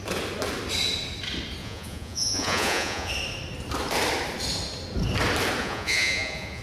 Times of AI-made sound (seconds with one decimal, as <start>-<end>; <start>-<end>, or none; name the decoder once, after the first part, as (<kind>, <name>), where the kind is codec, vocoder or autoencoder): 1.6-3.1 (vocoder, Vocos); 5.6-6.6